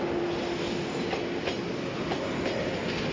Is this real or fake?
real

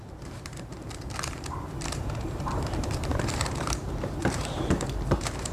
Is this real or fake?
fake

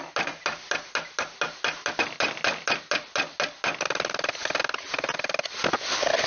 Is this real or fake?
real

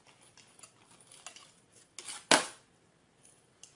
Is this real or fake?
real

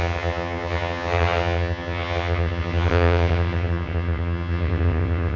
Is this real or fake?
fake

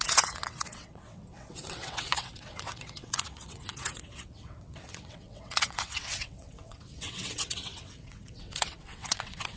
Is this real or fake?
fake